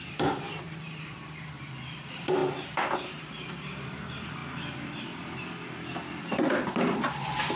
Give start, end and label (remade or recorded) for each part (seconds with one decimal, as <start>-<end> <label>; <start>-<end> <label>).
0.0-2.4 remade; 2.4-3.2 recorded; 3.2-4.4 remade; 4.4-6.2 recorded; 6.2-7.6 remade